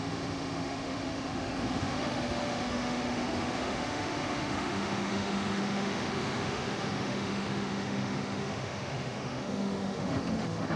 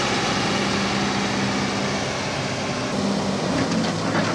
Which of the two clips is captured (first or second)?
second